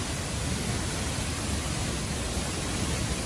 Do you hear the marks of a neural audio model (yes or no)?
no